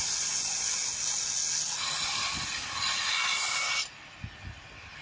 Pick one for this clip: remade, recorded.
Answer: recorded